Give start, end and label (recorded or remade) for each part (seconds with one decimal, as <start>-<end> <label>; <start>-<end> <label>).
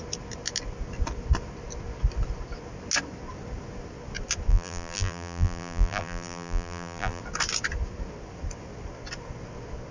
0.0-4.5 recorded; 4.5-7.2 remade; 7.2-9.9 recorded